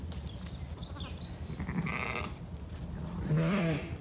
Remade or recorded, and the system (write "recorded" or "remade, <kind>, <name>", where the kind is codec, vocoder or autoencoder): recorded